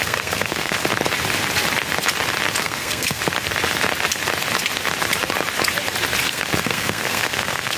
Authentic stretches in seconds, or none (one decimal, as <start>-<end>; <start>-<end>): 0.8-2.6; 3.2-6.2

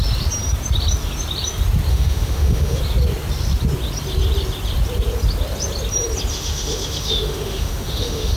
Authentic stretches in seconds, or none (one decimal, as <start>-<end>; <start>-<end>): 0.0-1.9; 2.8-6.3